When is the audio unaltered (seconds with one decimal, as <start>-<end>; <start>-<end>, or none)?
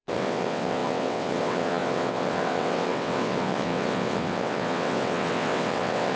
none